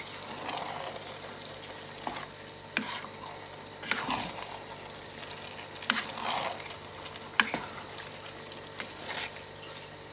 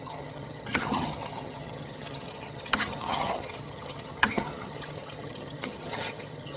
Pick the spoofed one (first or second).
second